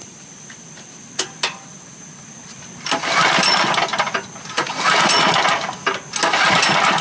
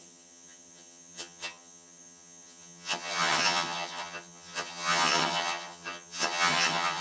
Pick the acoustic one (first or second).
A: first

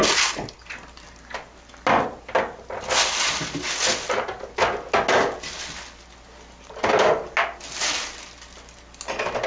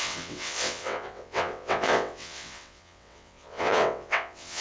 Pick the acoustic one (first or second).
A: first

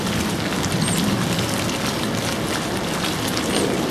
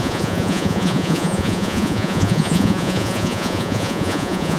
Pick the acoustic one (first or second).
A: first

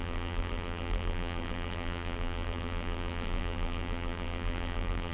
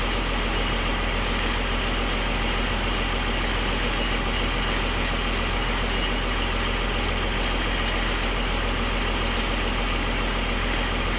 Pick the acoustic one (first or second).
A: second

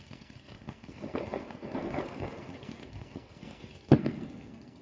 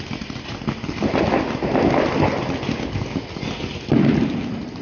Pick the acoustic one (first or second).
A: second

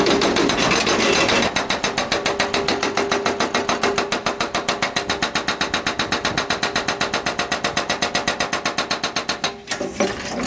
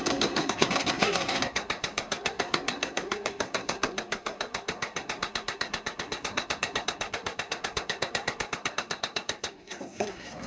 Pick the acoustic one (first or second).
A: first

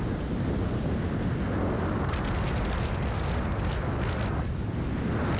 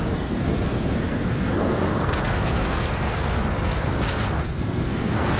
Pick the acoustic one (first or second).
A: first